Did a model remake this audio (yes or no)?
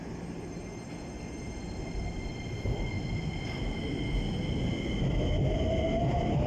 no